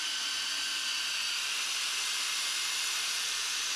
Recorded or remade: recorded